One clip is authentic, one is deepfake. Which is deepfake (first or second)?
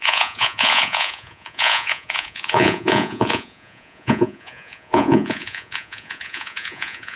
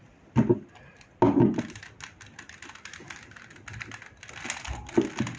first